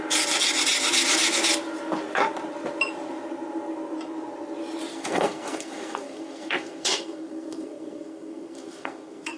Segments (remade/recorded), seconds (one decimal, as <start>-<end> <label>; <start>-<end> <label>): 0.0-4.9 recorded; 4.9-9.4 remade